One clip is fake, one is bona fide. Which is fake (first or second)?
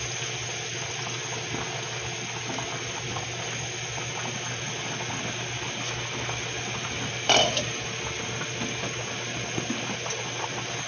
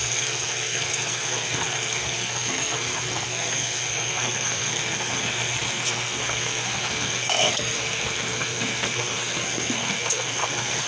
second